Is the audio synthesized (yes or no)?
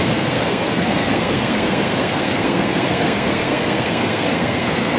yes